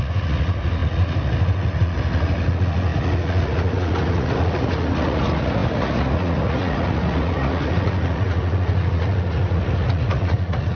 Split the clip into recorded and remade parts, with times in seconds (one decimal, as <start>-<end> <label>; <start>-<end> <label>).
0.0-10.8 remade